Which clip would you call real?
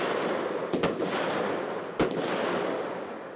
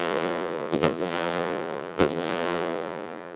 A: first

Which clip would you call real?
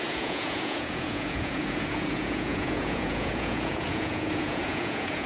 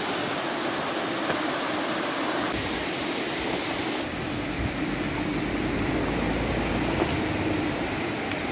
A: second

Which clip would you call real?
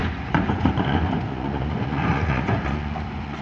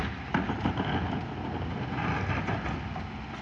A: second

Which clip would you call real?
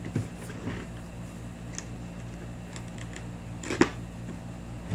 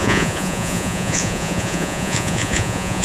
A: first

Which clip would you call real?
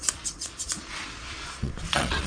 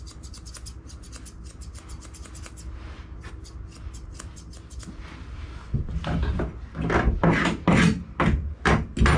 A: second